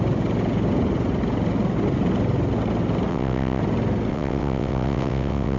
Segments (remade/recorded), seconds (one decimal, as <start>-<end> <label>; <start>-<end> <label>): 0.0-3.1 recorded; 3.1-3.6 remade; 3.6-4.1 recorded; 4.1-5.6 remade